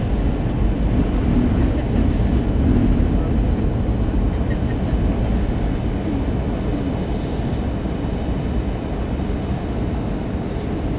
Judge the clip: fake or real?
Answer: real